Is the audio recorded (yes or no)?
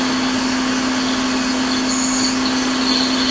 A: yes